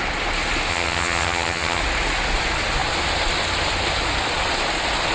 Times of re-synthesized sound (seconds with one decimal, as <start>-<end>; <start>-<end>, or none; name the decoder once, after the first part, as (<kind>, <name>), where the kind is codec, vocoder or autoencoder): 0.7-1.8 (vocoder, HiFi-GAN)